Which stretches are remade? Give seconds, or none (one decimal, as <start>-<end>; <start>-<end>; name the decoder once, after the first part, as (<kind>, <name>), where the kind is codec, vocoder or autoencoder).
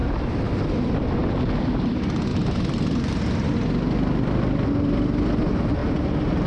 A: 0.0-0.5 (vocoder, BigVGAN v2); 1.2-1.9; 2.3-3.2; 5.8-6.5